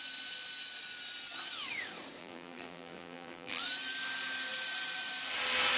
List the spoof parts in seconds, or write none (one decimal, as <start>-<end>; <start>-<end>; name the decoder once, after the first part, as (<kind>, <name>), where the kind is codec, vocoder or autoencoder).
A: 2.2-3.6 (vocoder, BigVGAN v2)